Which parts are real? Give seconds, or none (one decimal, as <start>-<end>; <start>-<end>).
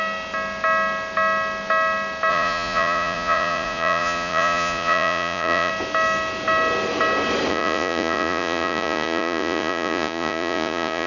0.0-2.3; 5.7-7.5